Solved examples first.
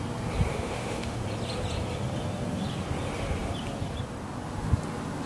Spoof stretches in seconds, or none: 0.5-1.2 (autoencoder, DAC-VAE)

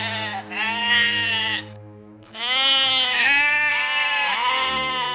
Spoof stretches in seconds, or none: 0.8-3.7 (autoencoder, DAC-VAE)

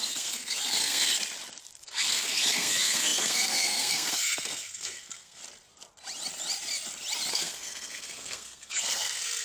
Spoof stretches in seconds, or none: 0.0-1.1 (codec, SNAC); 1.8-5.4; 7.3-9.4

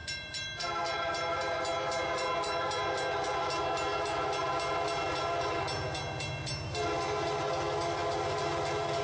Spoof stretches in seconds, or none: 0.0-1.6 (vocoder, BigVGAN v2)

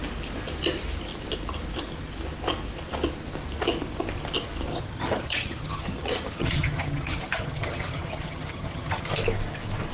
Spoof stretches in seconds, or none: 4.7-9.1 (vocoder, HiFi-GAN)

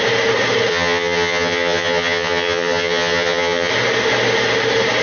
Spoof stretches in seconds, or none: 0.7-3.7 (vocoder, HiFi-GAN)

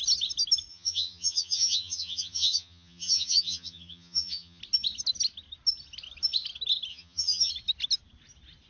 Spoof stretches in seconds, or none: 0.7-4.6 (vocoder, HiFi-GAN); 6.9-7.5